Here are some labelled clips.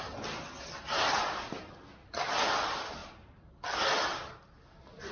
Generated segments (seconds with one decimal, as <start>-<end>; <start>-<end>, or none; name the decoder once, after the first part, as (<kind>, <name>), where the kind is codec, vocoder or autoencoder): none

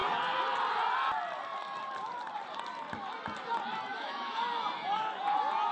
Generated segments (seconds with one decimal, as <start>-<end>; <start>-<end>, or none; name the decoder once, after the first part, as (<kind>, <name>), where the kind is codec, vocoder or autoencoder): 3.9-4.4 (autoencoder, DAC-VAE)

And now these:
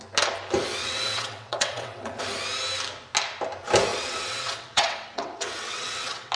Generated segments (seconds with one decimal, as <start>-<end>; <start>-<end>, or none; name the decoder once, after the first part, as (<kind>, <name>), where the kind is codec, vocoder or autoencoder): 0.8-2.2 (vocoder, WaveNeXt); 3.9-6.3

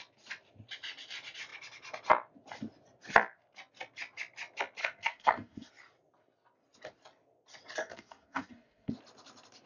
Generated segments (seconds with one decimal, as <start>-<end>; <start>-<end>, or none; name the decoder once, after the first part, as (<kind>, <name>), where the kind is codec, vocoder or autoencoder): 4.8-5.7 (codec, SNAC); 7.8-8.9

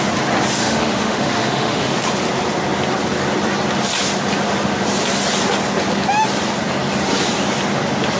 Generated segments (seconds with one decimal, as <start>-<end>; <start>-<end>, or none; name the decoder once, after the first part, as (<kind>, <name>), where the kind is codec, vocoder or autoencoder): 0.6-2.0 (autoencoder, DAC-VAE)

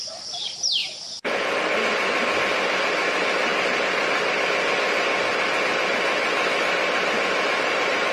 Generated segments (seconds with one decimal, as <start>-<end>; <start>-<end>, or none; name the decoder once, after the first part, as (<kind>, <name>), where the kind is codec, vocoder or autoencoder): 0.8-1.5 (vocoder, Vocos)